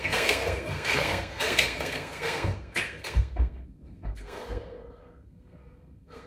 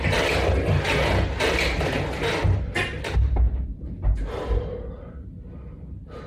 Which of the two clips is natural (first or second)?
second